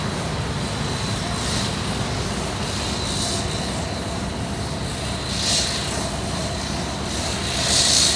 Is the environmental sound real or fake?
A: real